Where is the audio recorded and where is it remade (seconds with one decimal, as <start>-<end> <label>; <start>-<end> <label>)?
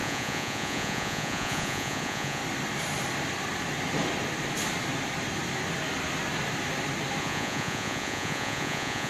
0.0-2.4 remade; 2.4-7.2 recorded; 7.2-9.1 remade